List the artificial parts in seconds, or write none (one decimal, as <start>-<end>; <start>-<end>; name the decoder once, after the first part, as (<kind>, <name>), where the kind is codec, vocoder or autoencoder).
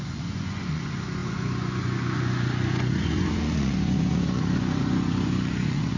0.0-6.0 (vocoder, Vocos)